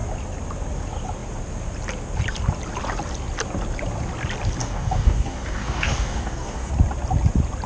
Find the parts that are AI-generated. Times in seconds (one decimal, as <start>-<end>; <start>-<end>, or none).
4.6-6.7